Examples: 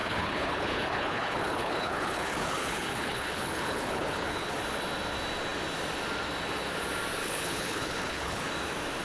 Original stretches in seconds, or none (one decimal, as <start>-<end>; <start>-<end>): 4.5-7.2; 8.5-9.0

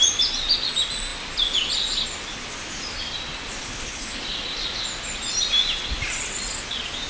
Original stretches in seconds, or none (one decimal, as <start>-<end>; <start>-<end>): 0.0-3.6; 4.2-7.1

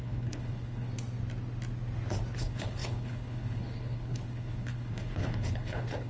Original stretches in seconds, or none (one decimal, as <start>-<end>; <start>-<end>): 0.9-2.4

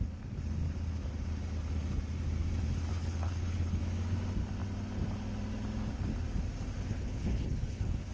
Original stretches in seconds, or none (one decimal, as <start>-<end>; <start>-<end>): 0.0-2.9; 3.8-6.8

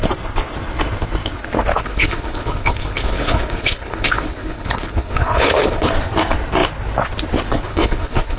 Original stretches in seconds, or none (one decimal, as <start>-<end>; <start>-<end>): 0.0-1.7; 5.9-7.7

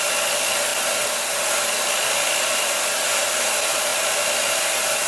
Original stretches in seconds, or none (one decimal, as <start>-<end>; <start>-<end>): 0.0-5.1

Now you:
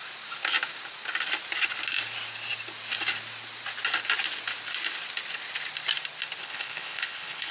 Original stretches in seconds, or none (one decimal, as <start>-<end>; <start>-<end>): 0.0-6.4